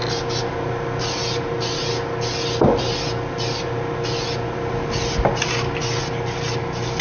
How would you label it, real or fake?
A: real